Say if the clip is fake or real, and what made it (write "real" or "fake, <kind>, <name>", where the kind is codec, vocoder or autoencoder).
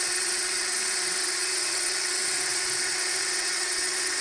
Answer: fake, vocoder, WaveNeXt